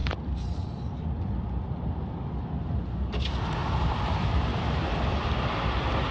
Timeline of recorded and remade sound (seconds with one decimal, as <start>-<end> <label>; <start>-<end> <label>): 0.0-2.3 remade; 2.3-3.6 recorded; 3.6-5.4 remade; 5.4-6.1 recorded